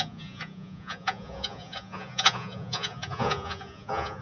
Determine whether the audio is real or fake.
fake